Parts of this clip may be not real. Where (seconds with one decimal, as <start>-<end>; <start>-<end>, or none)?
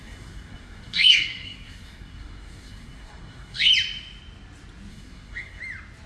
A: 0.0-3.7; 4.9-5.6